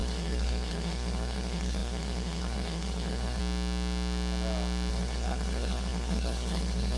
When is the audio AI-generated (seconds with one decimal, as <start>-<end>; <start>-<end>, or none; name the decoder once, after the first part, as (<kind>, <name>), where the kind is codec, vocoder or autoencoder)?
0.0-3.4 (codec, SNAC); 4.9-7.0